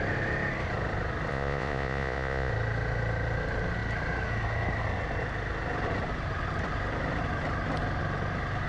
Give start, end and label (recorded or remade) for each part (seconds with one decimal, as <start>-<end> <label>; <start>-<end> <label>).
0.0-1.3 recorded; 1.3-2.5 remade; 2.5-8.7 recorded

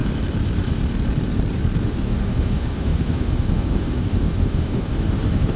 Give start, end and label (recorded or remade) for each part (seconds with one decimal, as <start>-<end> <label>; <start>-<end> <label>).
0.0-1.8 recorded; 1.8-5.6 remade

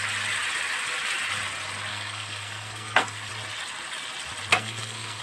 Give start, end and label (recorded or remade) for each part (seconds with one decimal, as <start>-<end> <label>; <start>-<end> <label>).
0.0-1.9 recorded; 1.9-3.3 remade; 3.3-4.5 recorded; 4.5-5.2 remade